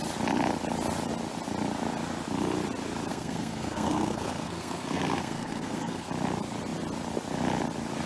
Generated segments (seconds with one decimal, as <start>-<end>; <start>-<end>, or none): 3.1-6.1